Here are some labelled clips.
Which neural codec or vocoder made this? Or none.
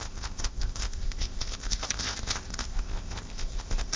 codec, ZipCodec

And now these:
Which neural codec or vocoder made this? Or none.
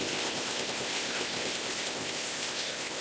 codec, ZipCodec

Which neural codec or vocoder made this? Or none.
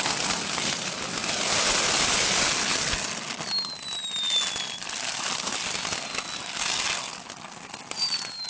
none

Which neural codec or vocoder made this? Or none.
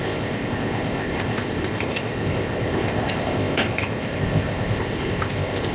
codec, ZipCodec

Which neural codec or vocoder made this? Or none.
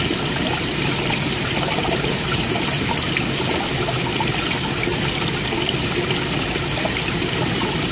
none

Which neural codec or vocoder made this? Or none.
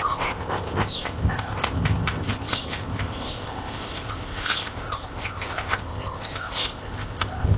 codec, ZipCodec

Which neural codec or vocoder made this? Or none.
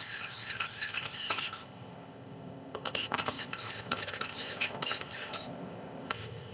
codec, ZipCodec